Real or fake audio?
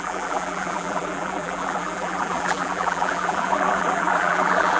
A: fake